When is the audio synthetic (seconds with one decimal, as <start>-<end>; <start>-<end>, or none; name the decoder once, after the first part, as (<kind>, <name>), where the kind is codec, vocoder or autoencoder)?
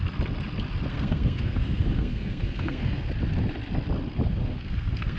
0.9-3.1 (codec, SNAC); 4.3-5.2